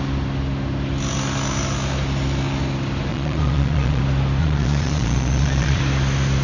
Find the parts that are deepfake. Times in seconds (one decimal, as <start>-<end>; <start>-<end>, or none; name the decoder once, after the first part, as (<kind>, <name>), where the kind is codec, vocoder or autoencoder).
3.1-4.0 (vocoder, Vocos); 4.4-5.8